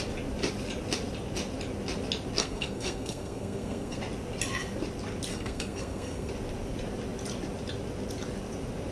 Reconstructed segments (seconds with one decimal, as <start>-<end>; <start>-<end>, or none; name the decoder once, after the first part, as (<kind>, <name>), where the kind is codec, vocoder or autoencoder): 2.4-4.0 (codec, SNAC); 5.3-6.3